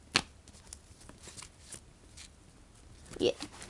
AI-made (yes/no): no